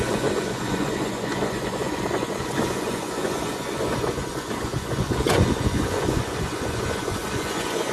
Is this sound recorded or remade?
remade